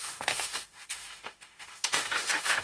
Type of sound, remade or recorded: remade